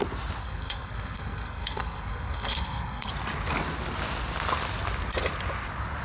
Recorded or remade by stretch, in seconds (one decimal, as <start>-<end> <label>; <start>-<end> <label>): 0.0-0.4 recorded; 0.4-3.1 remade; 3.1-6.0 recorded